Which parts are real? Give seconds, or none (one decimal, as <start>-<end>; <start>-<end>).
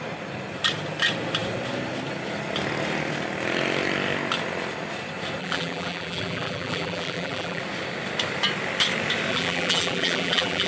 0.0-5.4; 7.6-9.3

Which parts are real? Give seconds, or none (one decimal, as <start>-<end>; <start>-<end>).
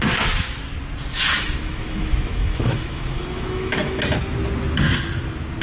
0.0-1.1; 4.0-5.6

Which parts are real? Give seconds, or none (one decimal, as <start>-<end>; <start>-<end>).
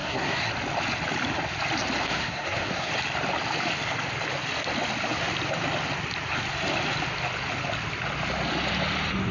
0.5-2.0; 2.9-9.3